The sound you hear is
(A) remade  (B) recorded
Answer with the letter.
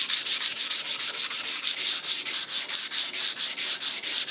A